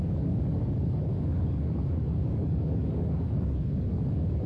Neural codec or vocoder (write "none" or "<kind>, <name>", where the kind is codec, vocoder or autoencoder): codec, DAC